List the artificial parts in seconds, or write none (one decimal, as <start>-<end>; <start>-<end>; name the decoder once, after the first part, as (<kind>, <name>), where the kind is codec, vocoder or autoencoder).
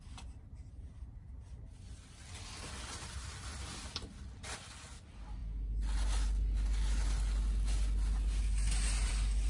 none